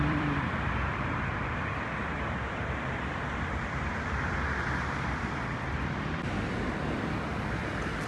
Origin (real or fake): fake